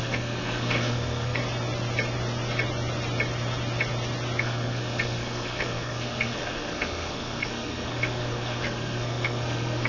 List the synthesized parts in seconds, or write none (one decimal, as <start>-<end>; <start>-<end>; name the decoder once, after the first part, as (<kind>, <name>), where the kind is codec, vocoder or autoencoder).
0.0-1.4 (codec, SNAC); 4.4-9.9